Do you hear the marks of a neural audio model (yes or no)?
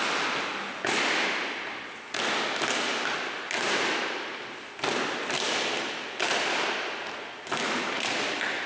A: no